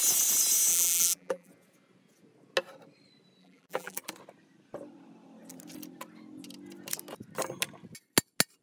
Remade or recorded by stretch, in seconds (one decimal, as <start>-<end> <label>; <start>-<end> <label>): 0.0-0.7 recorded; 0.7-1.5 remade; 1.5-3.4 recorded; 3.4-4.0 remade; 4.0-8.6 recorded